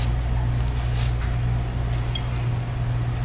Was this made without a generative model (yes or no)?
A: yes